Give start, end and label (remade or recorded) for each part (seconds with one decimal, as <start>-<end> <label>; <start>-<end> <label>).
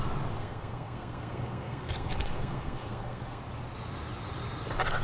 0.0-0.4 recorded; 0.4-3.4 remade; 3.4-5.0 recorded